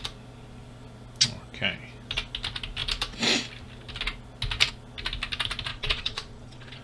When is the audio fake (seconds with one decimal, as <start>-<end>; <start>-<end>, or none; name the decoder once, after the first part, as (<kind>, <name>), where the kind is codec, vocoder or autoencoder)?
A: 5.7-6.8 (vocoder, Vocos)